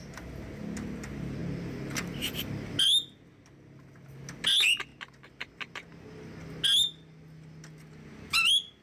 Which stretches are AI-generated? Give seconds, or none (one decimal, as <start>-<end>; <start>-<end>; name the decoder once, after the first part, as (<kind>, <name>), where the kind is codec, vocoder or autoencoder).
none